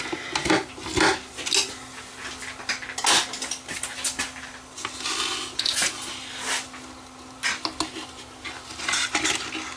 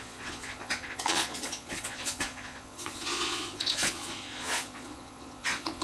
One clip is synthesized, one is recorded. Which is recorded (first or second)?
first